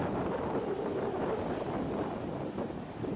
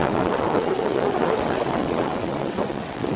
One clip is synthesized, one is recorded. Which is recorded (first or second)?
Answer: first